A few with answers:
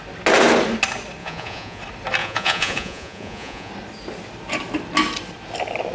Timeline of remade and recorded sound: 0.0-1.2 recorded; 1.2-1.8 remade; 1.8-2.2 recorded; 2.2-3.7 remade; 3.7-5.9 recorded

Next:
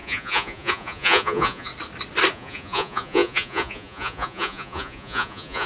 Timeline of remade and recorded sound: 0.0-1.7 remade; 1.7-2.3 recorded; 2.3-5.7 remade

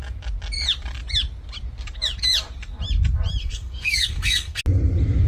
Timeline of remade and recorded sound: 0.0-3.4 recorded; 3.4-4.6 remade; 4.6-5.3 recorded

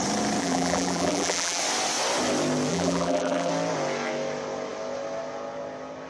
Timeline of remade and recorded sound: 0.0-0.4 recorded; 0.4-1.6 remade; 1.6-2.7 recorded; 2.7-3.5 remade; 3.5-6.1 recorded

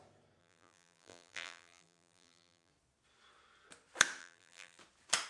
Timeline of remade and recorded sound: 0.0-0.4 recorded; 0.4-2.7 remade; 2.7-4.2 recorded; 4.2-4.8 remade; 4.8-5.3 recorded

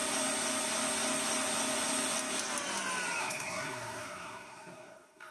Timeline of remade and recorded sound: 0.0-3.2 recorded; 3.2-5.3 remade

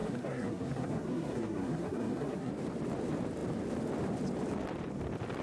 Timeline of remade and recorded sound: 0.0-2.5 remade; 2.5-5.4 recorded

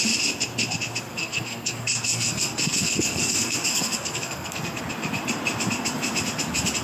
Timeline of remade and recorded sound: 0.0-1.1 recorded; 1.1-4.8 remade; 4.8-6.8 recorded